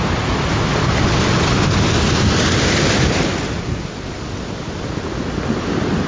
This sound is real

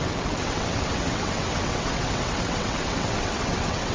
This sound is fake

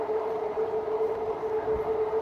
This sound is real